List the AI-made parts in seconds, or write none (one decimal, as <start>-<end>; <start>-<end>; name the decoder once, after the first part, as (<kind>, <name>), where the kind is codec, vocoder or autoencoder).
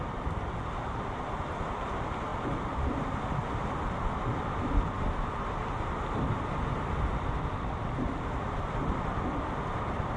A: none